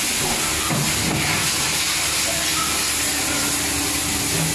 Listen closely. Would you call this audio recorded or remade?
recorded